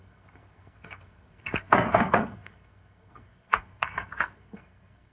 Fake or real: fake